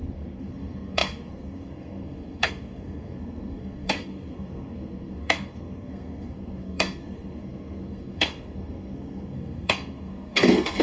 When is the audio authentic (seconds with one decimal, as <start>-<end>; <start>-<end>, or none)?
none